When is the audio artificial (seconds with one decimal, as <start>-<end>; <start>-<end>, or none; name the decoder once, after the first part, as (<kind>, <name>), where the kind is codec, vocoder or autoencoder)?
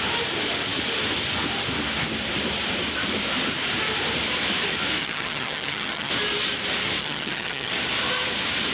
5.0-6.1 (vocoder, HiFi-GAN); 7.0-7.7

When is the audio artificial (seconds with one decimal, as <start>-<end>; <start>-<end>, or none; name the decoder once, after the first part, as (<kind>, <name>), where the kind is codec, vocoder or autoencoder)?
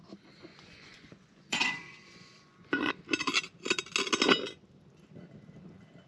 0.5-2.9 (vocoder, Vocos)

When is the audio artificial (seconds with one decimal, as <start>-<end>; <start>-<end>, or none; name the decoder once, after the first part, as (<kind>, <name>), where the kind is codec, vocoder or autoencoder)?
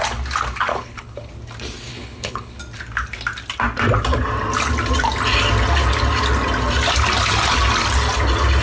0.7-1.3 (codec, HILCodec); 1.9-2.6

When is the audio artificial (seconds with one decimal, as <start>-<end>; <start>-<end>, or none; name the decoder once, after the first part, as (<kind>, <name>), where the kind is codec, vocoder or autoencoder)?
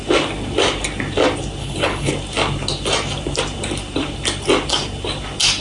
1.6-2.1 (codec, HILCodec)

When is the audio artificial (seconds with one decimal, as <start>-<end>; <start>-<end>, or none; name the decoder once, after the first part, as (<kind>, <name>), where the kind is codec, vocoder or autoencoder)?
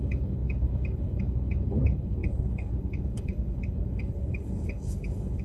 0.0-5.4 (codec, HILCodec)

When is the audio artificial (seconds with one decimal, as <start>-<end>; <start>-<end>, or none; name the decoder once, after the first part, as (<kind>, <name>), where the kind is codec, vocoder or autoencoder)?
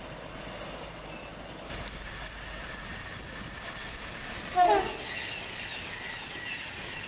none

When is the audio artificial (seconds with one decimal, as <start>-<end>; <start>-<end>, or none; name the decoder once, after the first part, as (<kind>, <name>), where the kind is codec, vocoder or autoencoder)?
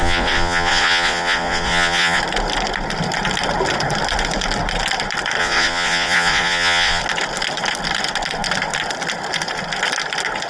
0.0-2.2 (vocoder, Vocos); 5.4-7.0